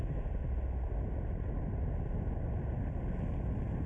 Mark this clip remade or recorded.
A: recorded